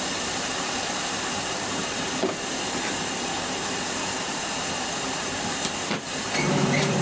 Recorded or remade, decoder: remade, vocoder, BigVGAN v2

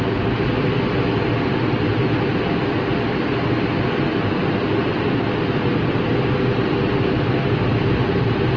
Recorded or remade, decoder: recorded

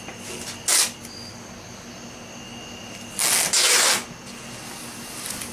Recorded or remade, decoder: recorded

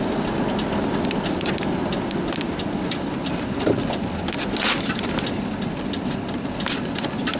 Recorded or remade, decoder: recorded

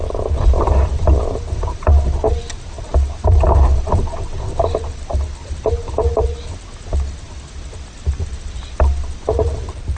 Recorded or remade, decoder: recorded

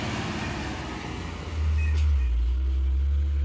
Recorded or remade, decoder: recorded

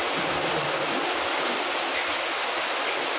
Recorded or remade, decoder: recorded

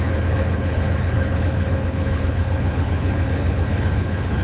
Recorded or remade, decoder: remade, codec, HILCodec